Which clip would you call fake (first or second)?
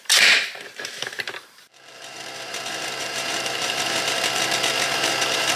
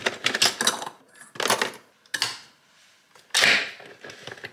first